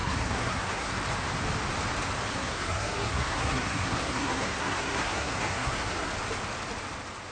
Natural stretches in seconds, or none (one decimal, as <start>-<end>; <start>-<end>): 0.9-2.3; 6.1-7.3